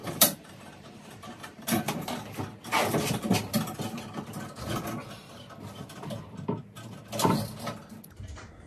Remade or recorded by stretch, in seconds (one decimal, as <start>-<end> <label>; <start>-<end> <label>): 0.0-2.4 remade; 2.4-8.7 recorded